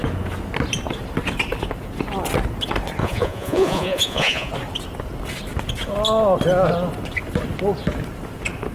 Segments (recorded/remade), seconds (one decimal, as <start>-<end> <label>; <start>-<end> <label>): 0.0-3.0 recorded; 3.0-4.5 remade; 4.5-8.7 recorded